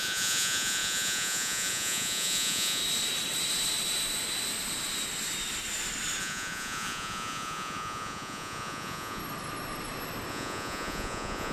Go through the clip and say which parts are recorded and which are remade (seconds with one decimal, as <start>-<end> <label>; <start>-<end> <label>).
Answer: 0.0-2.8 remade; 2.8-6.2 recorded; 6.2-9.2 remade; 9.2-10.3 recorded; 10.3-11.5 remade